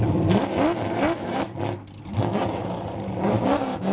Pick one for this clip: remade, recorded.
recorded